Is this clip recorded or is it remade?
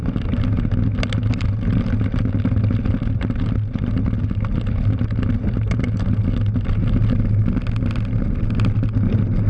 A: recorded